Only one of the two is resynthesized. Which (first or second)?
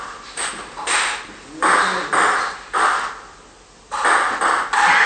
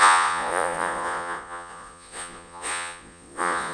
second